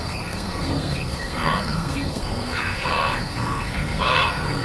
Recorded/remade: remade